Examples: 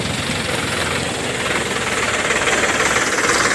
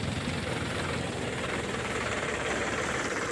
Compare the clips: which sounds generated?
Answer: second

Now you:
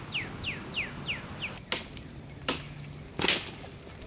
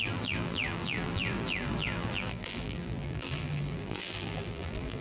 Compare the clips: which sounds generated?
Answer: second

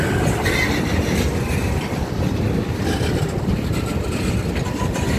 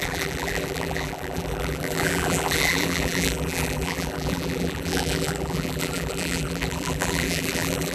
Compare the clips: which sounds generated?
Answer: second